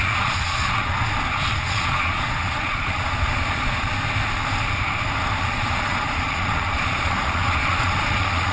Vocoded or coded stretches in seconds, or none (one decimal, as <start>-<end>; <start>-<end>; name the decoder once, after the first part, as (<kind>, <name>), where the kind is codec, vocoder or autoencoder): 0.0-1.0 (vocoder, Vocos); 1.5-3.9; 5.4-8.5